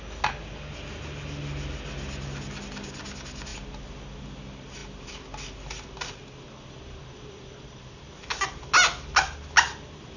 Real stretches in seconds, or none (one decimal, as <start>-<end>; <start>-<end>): 0.0-10.2